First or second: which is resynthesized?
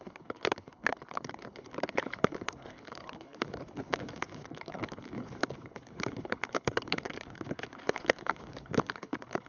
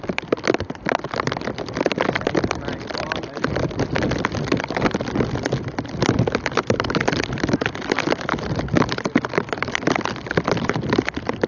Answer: first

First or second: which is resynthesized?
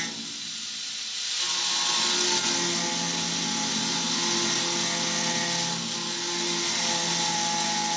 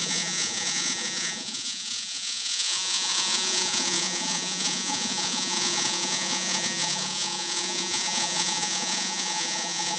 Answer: second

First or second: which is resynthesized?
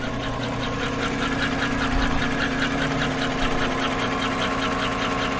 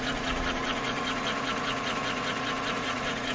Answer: second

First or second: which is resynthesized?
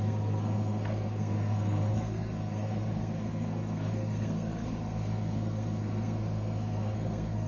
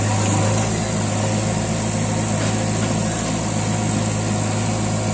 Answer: first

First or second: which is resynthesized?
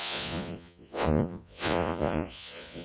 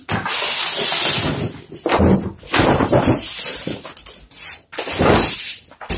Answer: first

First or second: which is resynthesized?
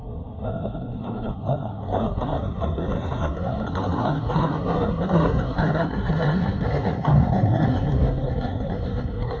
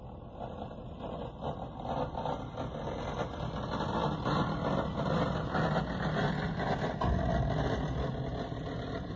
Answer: first